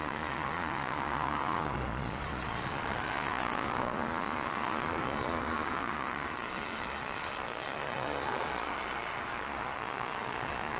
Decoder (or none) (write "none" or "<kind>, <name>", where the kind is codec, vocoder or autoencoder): vocoder, Vocos